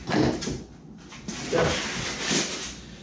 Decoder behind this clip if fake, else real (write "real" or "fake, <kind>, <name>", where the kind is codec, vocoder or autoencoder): real